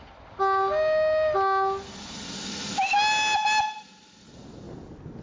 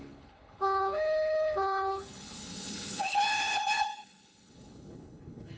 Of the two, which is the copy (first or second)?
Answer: second